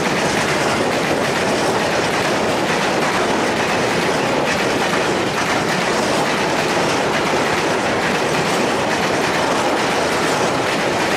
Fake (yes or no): no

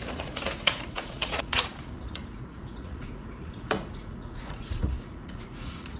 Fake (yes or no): yes